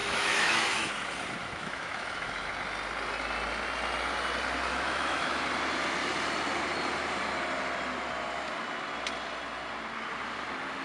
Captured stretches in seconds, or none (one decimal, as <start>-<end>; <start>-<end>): 0.9-1.4; 2.5-4.7; 5.4-10.8